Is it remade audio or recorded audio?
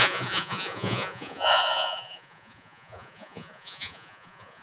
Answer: remade